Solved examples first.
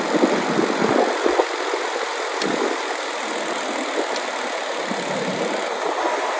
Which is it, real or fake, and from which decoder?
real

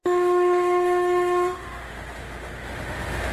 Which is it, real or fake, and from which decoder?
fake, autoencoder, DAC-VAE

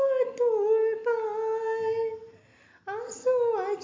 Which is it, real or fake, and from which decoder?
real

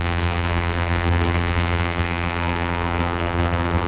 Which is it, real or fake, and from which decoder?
fake, vocoder, BigVGAN v2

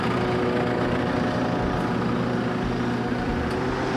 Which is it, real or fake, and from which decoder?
real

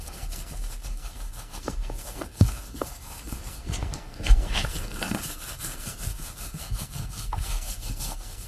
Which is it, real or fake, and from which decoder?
fake, codec, SNAC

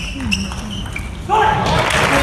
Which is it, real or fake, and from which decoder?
real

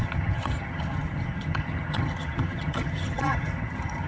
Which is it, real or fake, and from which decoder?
fake, vocoder, HiFi-GAN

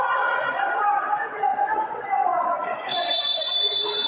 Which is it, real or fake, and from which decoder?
fake, vocoder, Vocos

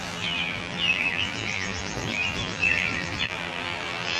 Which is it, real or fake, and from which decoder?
fake, vocoder, BigVGAN v2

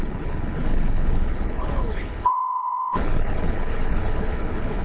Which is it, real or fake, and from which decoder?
fake, codec, HILCodec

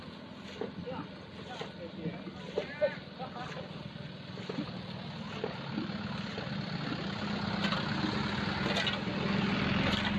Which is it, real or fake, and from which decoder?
real